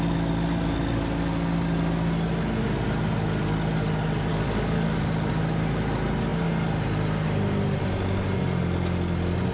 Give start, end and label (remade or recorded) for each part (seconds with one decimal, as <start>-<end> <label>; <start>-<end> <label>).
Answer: 0.0-4.3 recorded; 4.3-5.3 remade; 5.3-9.5 recorded